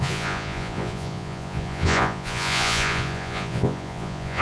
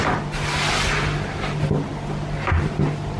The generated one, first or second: first